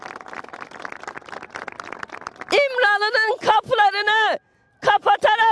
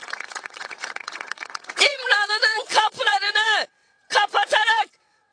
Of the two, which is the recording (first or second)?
first